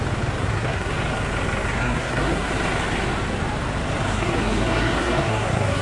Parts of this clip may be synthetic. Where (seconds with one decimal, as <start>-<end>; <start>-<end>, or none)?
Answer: 0.4-0.9; 1.7-2.5; 4.1-5.8